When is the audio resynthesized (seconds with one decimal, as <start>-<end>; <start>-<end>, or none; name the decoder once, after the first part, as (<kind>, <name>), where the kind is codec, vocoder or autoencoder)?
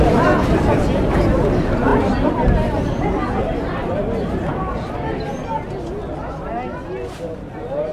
none